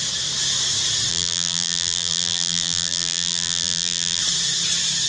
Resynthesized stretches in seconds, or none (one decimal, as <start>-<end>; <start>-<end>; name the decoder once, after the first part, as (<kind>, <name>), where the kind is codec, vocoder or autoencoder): 1.1-4.2 (vocoder, BigVGAN v2)